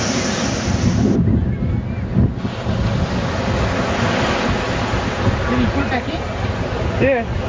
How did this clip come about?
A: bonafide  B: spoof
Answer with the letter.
A